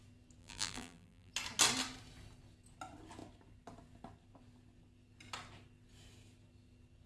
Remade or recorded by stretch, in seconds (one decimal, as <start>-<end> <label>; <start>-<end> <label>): 0.0-0.4 recorded; 0.4-1.3 remade; 1.3-7.1 recorded